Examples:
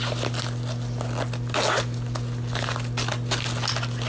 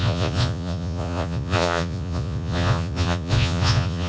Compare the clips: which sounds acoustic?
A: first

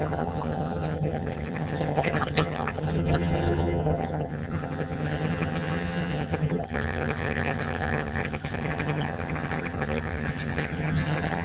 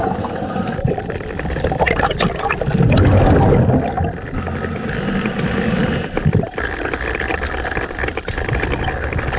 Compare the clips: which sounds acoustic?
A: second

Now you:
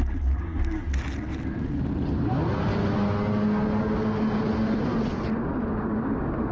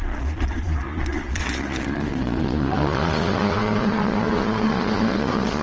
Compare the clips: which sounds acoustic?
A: first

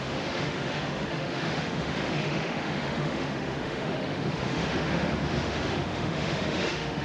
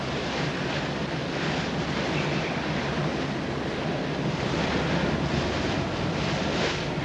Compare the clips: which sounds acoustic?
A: second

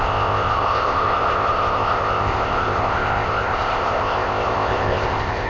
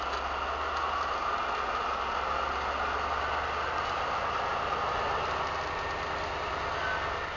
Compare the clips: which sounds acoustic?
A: second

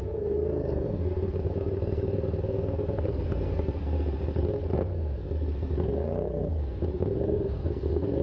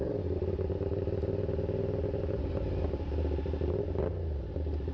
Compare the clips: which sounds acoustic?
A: second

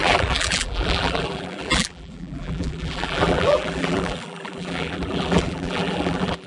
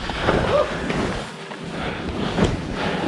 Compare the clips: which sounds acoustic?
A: second